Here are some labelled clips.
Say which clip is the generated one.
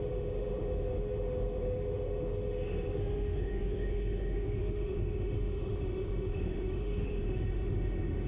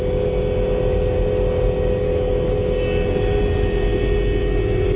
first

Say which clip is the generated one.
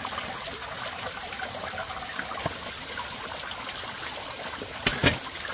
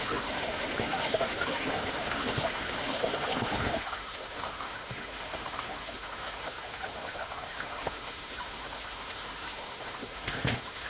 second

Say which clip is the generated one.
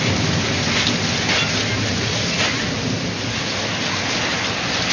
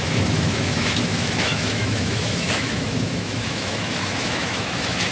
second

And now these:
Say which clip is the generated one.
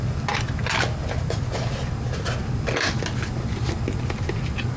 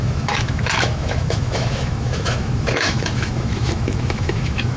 second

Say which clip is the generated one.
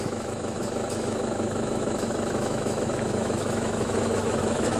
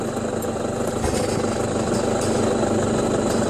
first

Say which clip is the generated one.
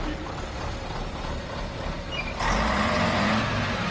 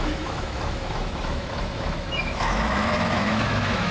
second